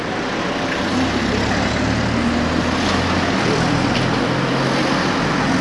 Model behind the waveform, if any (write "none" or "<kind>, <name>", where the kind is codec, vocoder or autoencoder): none